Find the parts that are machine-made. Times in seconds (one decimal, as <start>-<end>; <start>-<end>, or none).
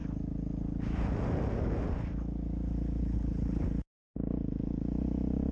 3.0-3.6